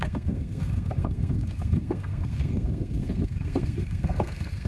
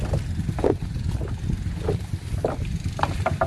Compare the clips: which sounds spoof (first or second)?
first